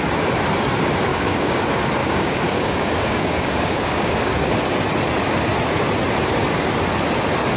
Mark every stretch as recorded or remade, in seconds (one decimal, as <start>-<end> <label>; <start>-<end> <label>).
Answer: 0.0-1.1 recorded; 1.1-1.6 remade; 1.6-2.0 recorded; 2.0-4.5 remade; 4.5-7.6 recorded